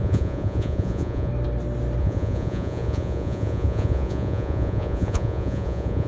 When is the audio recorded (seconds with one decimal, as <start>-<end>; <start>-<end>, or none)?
1.3-2.0